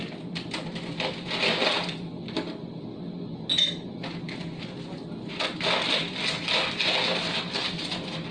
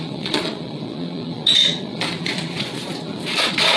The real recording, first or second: first